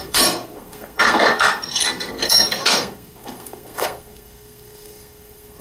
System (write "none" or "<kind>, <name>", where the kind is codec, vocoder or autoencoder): codec, SNAC